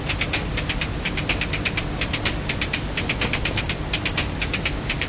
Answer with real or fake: real